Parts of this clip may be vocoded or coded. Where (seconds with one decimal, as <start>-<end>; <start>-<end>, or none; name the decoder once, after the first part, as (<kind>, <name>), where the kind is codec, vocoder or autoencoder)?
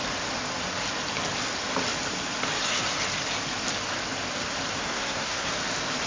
4.7-5.5 (codec, SNAC)